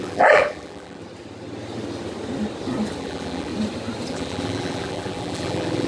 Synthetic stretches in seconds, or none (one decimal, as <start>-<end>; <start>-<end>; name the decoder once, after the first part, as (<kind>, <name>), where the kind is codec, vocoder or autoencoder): 0.0-1.0 (vocoder, BigVGAN v2); 3.0-3.5; 4.1-5.9